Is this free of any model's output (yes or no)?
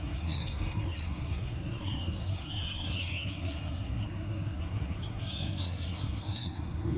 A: no